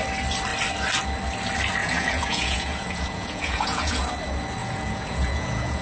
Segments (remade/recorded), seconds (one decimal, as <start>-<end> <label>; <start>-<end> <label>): 0.0-1.8 recorded; 1.8-4.0 remade; 4.0-4.6 recorded; 4.6-5.8 remade